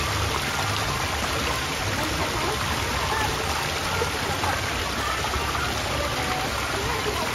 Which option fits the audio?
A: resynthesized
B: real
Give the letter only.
B